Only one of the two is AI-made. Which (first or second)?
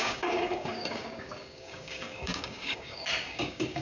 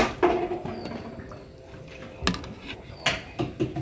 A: first